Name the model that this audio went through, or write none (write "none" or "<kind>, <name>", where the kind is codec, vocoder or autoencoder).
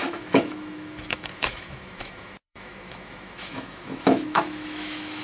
autoencoder, DAC-VAE